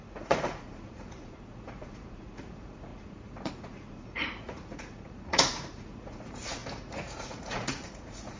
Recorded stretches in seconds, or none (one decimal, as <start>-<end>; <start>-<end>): none